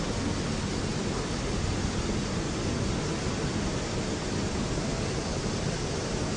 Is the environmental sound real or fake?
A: real